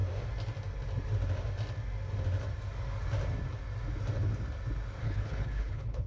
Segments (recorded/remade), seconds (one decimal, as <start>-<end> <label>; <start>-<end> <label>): 0.0-5.0 recorded; 5.0-6.1 remade